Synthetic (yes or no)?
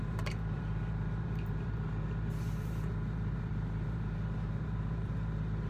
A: yes